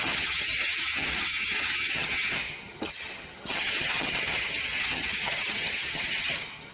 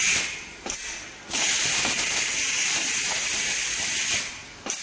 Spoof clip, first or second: first